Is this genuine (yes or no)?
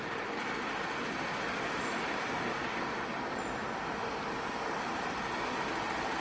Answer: yes